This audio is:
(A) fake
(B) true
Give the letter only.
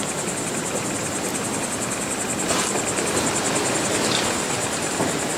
B